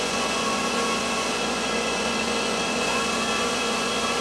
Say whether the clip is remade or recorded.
remade